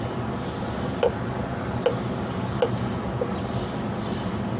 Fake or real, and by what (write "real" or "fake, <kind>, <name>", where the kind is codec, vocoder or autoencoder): real